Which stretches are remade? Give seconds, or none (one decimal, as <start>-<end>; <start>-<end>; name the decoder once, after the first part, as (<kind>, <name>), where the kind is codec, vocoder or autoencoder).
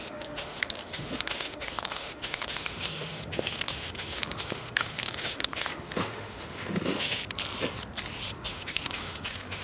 0.0-7.2 (autoencoder, DAC-VAE); 8.3-9.6